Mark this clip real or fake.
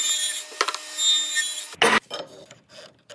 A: real